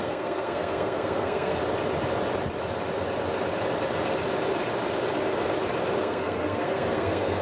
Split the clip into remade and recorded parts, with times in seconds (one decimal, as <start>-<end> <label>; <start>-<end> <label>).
0.0-1.6 remade; 1.6-6.0 recorded; 6.0-7.4 remade